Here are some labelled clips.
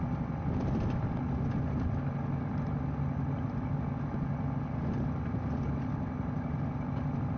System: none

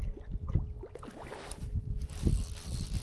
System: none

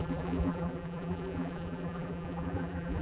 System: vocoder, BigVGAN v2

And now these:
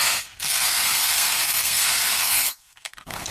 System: codec, SNAC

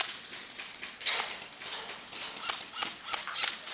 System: none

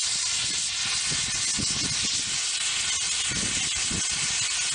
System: none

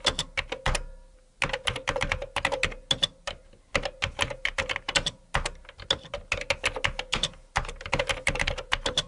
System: none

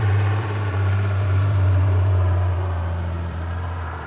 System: vocoder, BigVGAN v2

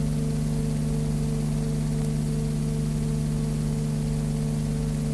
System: none